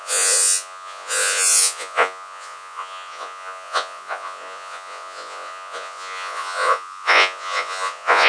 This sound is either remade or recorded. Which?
remade